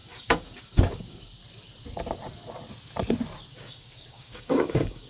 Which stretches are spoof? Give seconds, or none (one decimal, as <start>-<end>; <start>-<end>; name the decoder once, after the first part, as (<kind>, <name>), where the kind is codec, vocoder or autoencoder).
0.0-1.2 (codec, DAC); 3.5-5.1